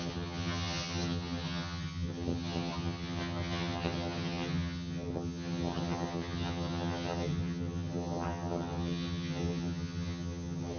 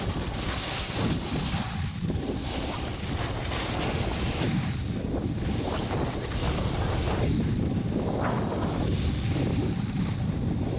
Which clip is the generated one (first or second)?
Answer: first